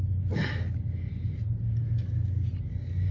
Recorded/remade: recorded